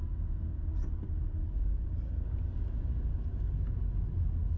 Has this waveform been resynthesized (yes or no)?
no